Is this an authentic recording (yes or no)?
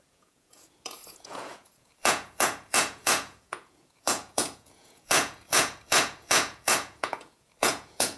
no